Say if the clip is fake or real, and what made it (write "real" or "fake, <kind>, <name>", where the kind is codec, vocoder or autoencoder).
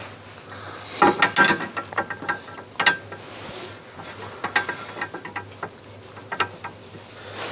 real